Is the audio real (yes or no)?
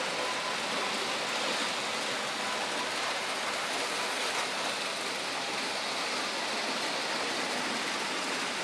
yes